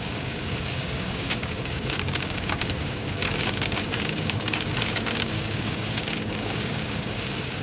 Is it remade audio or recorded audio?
remade